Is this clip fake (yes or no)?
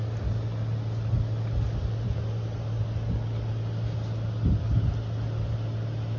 no